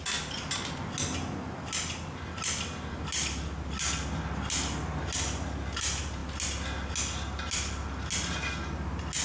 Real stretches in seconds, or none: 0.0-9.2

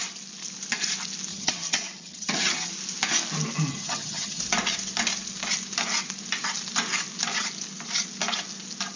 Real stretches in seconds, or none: 0.0-1.3; 2.7-3.7; 4.4-9.0

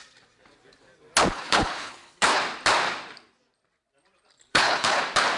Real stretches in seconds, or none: 0.0-1.3; 2.4-4.5; 5.0-5.4

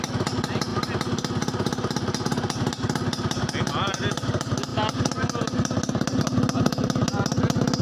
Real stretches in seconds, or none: 0.0-7.8

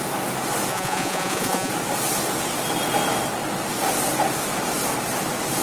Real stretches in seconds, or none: 0.0-0.7; 1.7-5.6

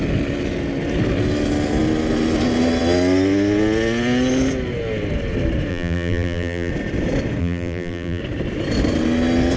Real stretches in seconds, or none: 0.0-5.7; 6.7-7.4; 8.2-9.6